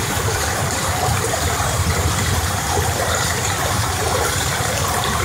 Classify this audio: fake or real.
fake